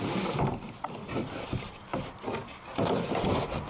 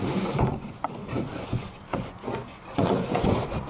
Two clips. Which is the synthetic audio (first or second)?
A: second